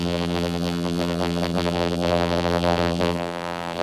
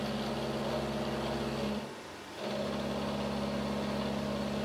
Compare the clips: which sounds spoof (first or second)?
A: first